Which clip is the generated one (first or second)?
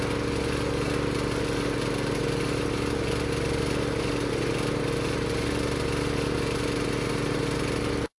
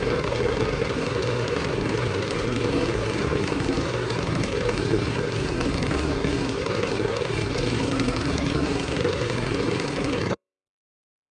second